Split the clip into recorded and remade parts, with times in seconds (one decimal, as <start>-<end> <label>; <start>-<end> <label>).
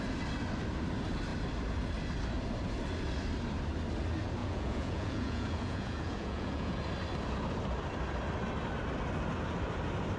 0.0-4.4 recorded; 4.4-6.8 remade; 6.8-10.2 recorded